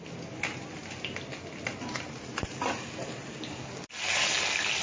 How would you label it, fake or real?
real